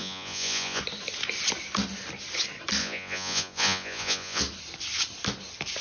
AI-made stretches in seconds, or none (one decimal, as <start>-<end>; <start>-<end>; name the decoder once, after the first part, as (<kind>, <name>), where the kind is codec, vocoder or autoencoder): 0.0-0.8 (vocoder, Vocos); 2.8-4.4